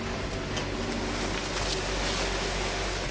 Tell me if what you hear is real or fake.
real